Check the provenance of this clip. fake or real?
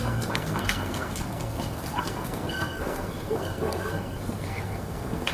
fake